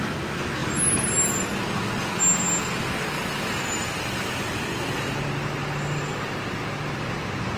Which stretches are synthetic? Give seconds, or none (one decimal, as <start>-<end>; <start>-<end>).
none